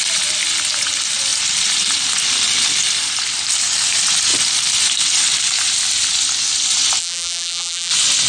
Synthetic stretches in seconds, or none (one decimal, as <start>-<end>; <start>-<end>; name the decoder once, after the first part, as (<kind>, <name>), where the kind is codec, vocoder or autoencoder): 7.0-7.9 (vocoder, BigVGAN v2)